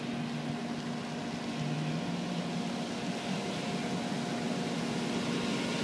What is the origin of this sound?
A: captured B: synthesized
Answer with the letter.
A